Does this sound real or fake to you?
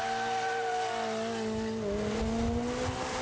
real